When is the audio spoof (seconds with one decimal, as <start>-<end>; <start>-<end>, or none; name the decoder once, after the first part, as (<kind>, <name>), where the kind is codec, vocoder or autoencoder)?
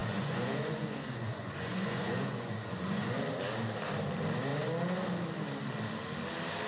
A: 0.0-3.2 (vocoder, Vocos)